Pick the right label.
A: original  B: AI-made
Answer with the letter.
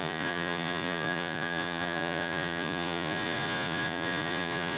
B